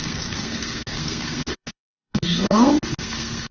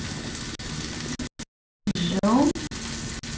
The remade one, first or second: first